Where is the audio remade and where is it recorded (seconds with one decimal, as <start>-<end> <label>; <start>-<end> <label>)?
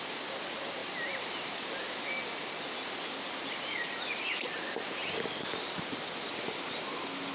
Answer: 0.0-7.3 recorded